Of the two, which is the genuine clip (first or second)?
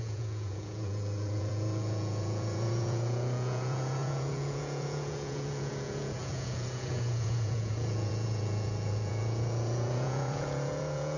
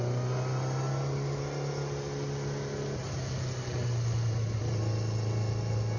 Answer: second